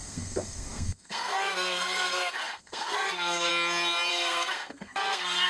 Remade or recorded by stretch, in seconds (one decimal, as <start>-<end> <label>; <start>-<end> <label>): 0.0-3.5 remade; 3.5-4.1 recorded; 4.1-5.5 remade